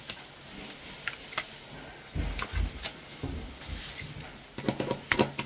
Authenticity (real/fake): real